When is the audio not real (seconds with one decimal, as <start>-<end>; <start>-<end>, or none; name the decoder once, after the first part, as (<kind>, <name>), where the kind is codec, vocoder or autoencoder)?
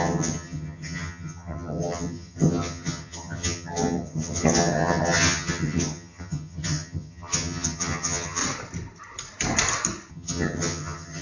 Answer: 0.0-8.4 (vocoder, HiFi-GAN); 10.1-11.2